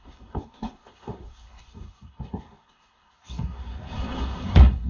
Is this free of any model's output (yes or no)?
no